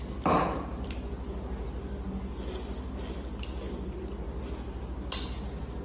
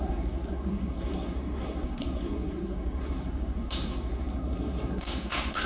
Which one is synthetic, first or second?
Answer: second